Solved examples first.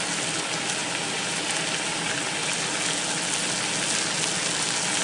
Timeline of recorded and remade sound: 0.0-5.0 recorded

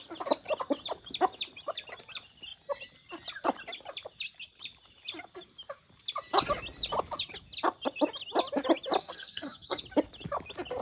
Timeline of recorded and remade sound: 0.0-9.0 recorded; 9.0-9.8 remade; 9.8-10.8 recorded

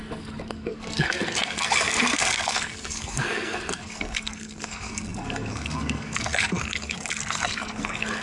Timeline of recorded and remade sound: 0.0-8.2 remade